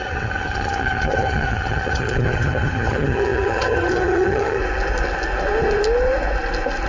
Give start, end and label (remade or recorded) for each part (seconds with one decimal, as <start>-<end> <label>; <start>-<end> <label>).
0.0-4.6 remade; 4.6-6.9 recorded